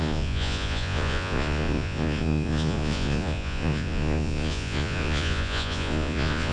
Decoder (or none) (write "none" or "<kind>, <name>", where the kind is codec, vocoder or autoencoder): vocoder, Vocos